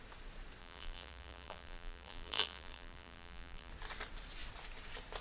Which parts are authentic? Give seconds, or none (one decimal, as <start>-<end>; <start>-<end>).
0.0-0.6; 3.7-5.2